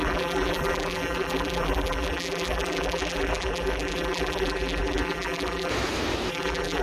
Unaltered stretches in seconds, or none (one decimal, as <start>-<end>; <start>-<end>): 5.7-6.3